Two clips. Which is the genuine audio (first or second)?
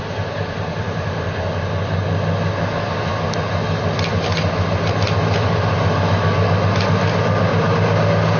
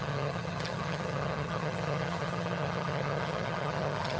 first